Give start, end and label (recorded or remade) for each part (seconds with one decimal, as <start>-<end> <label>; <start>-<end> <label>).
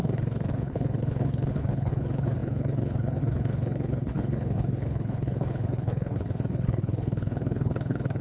0.0-8.2 remade